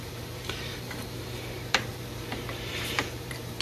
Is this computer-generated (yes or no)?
yes